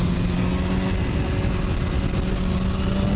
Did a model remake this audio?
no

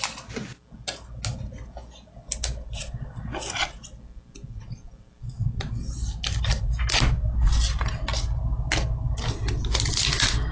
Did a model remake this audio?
no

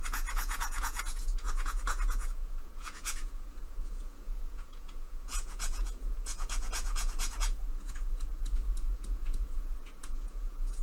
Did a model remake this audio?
yes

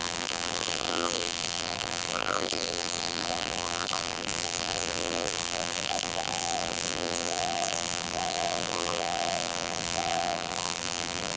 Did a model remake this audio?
yes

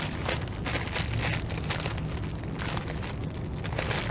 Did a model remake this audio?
no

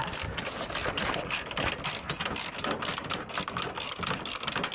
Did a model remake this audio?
no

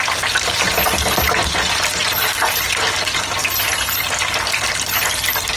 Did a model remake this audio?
no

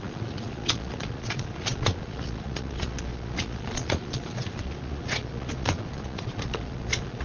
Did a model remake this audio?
yes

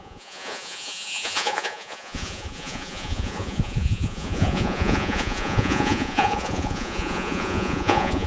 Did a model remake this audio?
yes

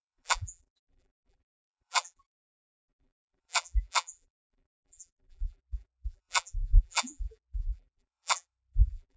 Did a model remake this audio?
yes